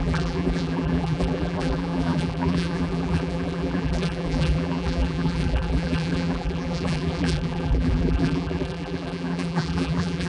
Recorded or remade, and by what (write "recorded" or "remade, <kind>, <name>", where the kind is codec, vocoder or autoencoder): remade, vocoder, BigVGAN v2